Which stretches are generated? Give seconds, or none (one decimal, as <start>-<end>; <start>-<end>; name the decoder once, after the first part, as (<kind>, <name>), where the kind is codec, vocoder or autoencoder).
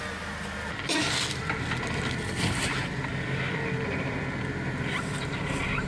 none